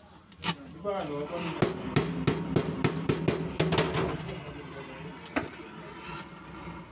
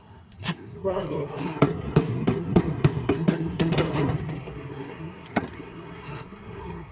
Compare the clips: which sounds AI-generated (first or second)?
second